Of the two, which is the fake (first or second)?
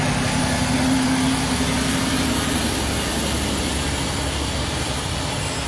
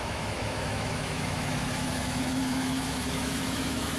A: second